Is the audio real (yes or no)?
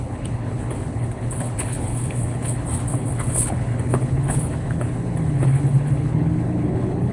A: no